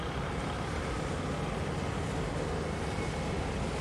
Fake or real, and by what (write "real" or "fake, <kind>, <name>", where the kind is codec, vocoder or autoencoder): real